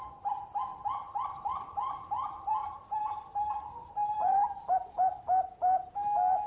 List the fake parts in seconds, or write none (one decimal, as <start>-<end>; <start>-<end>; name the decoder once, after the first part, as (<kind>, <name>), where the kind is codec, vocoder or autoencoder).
0.7-4.6 (vocoder, BigVGAN v2)